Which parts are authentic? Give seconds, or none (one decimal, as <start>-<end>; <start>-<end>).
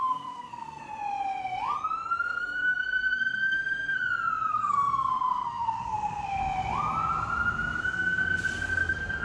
0.8-2.1; 4.0-4.5; 6.4-7.8